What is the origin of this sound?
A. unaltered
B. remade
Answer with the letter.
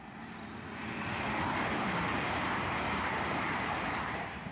A